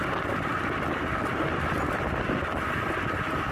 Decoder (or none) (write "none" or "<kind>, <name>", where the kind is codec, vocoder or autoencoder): none